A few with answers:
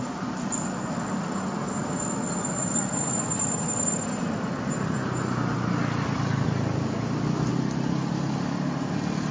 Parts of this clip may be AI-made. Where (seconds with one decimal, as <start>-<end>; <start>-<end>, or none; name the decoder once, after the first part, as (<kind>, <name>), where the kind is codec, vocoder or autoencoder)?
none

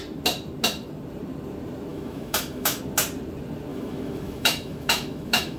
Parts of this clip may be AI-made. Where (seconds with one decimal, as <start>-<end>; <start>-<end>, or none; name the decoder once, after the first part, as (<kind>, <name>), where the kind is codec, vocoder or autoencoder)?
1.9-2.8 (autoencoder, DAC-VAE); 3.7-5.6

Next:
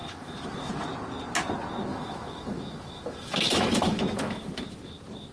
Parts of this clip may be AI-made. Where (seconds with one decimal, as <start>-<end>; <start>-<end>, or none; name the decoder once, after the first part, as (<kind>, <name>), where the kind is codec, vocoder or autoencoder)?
0.0-0.7 (autoencoder, DAC-VAE); 1.9-4.6